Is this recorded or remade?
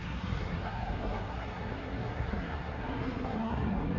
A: remade